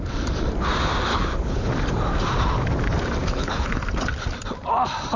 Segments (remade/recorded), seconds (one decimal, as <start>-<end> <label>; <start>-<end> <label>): 0.0-1.1 recorded; 1.1-1.7 remade; 1.7-3.2 recorded; 3.2-3.8 remade; 3.8-5.2 recorded